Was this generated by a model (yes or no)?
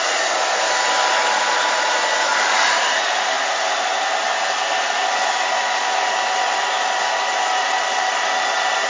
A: no